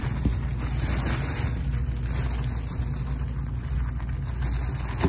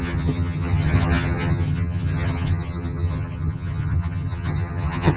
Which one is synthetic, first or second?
second